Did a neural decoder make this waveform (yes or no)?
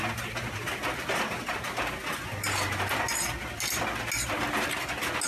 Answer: no